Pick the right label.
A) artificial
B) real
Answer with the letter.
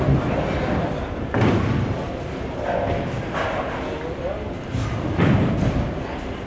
B